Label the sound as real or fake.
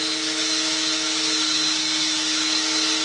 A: fake